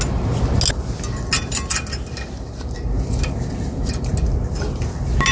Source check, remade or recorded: recorded